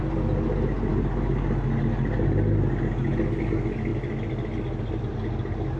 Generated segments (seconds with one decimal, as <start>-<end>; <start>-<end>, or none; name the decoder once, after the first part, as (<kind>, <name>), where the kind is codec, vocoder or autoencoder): none